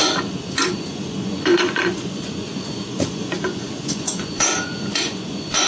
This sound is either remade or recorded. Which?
remade